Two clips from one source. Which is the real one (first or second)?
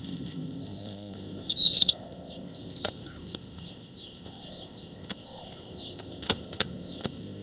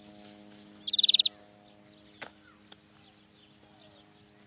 second